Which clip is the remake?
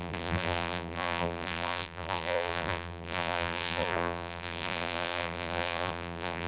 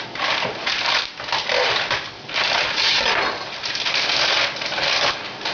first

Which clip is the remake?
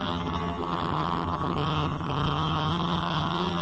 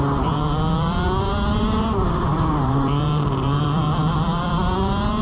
first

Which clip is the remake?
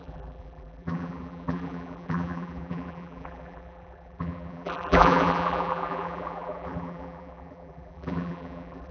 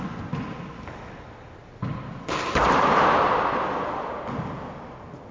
first